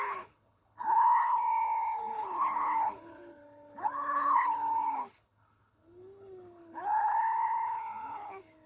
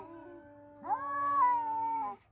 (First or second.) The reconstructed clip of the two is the first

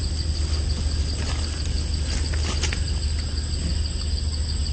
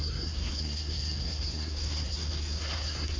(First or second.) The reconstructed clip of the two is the second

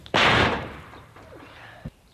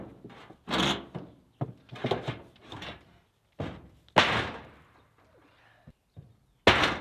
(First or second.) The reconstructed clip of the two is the first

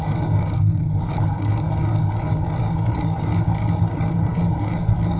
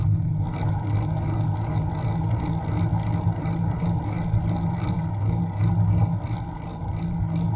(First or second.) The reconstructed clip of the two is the first